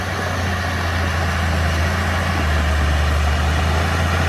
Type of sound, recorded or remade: recorded